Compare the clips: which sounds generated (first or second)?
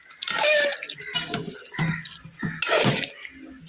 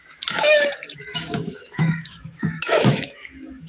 second